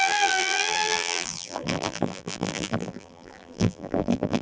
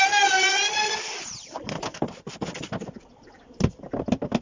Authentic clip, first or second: second